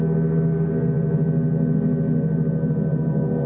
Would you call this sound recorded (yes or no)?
yes